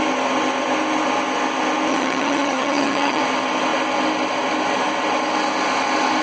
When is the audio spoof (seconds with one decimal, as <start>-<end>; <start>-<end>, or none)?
1.9-3.2